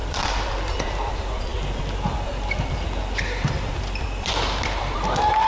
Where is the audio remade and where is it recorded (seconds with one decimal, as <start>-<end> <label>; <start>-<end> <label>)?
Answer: 0.0-1.1 remade; 1.1-5.5 recorded